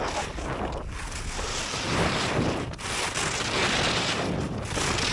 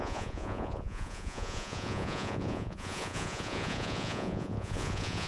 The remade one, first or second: second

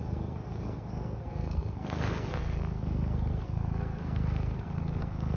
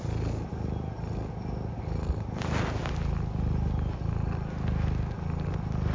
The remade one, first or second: first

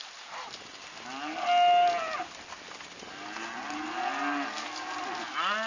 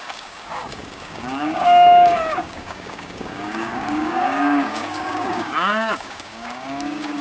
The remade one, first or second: second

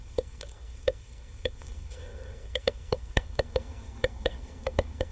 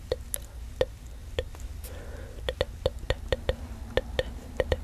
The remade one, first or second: first